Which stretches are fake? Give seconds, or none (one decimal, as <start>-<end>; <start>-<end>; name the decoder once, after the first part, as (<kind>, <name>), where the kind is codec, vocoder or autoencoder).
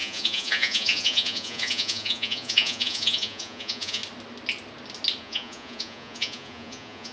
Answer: 0.0-4.0 (vocoder, Vocos); 5.2-7.1